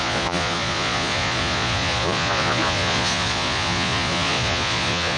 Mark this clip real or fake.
fake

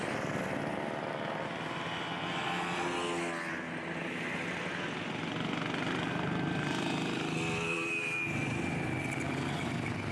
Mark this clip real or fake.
real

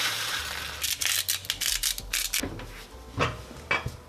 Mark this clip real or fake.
real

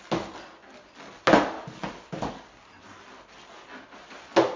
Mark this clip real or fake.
real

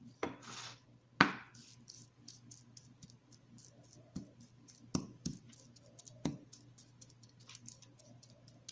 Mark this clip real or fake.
real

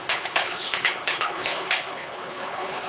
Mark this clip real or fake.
fake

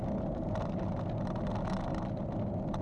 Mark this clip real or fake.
real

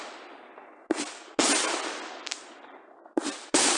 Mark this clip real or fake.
real